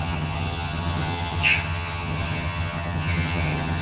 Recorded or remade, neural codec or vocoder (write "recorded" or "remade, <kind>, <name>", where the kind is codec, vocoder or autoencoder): remade, vocoder, HiFi-GAN